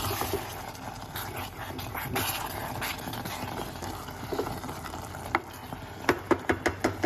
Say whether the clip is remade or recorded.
recorded